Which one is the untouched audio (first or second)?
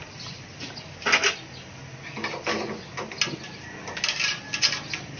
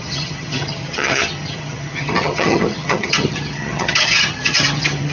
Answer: first